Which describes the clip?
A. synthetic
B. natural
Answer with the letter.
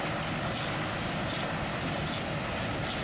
B